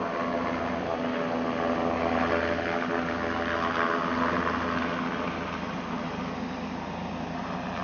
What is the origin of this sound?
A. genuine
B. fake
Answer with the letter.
A